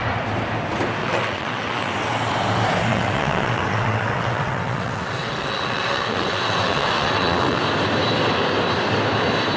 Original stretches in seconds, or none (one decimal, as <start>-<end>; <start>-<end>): 0.0-1.0; 1.9-2.9; 7.6-9.6